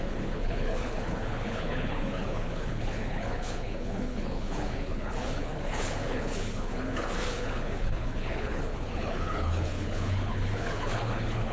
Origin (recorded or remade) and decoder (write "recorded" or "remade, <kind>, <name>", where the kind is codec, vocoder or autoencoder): remade, codec, HILCodec